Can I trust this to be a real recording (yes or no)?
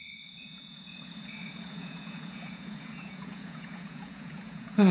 no